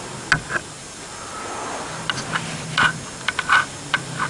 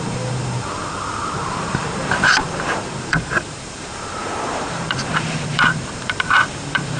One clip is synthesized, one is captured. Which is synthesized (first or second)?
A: second